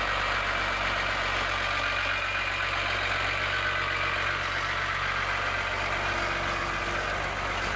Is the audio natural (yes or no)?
yes